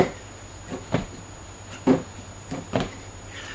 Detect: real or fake real